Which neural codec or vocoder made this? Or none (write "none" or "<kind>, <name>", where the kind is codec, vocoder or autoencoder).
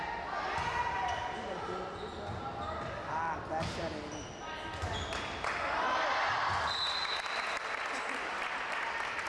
none